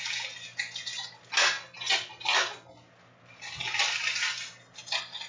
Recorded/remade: recorded